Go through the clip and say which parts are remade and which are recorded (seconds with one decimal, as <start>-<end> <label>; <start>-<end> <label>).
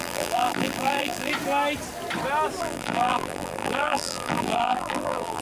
0.0-1.3 remade; 1.3-2.6 recorded; 2.6-5.4 remade